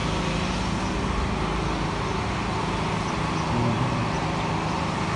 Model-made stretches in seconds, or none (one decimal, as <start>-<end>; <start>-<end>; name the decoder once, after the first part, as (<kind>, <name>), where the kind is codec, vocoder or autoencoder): none